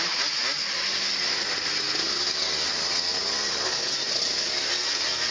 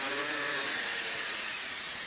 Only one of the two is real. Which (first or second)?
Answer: first